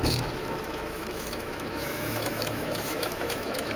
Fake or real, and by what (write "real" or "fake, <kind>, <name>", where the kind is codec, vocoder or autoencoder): fake, autoencoder, DAC-VAE